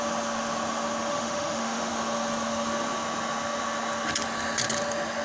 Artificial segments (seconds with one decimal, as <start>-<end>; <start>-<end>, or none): 1.1-1.9